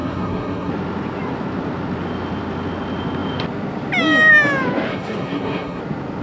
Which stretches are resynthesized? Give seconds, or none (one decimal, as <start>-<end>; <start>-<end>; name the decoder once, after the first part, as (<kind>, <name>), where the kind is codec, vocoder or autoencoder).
0.0-0.7 (codec, SNAC); 4.9-5.8